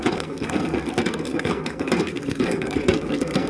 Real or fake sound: fake